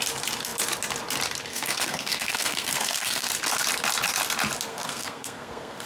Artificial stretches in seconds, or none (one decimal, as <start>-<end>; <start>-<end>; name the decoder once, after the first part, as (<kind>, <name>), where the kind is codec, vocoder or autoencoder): 1.5-3.3 (codec, SNAC); 4.7-5.9